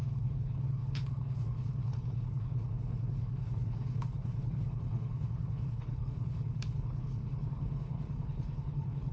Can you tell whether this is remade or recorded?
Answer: remade